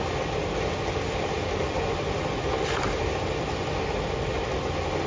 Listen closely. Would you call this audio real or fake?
real